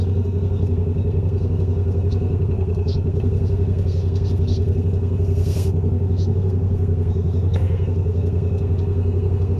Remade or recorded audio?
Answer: remade